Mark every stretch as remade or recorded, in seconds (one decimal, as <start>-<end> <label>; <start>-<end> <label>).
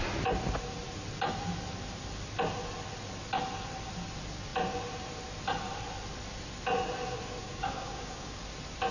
0.0-7.4 recorded; 7.4-8.4 remade; 8.4-8.9 recorded